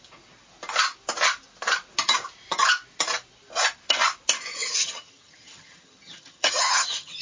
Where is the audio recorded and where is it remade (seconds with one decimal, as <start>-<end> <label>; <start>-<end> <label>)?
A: 0.0-4.5 recorded; 4.5-7.2 remade